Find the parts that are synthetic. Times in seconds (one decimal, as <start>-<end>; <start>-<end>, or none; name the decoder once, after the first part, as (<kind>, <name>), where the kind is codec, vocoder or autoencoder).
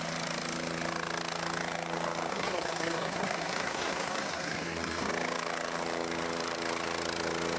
2.3-5.1 (codec, SNAC)